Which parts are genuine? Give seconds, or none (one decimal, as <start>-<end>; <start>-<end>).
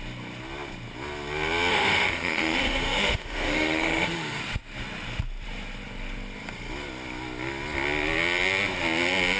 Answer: 0.0-1.7; 4.4-9.4